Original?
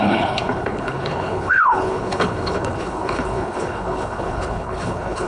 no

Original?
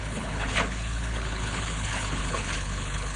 no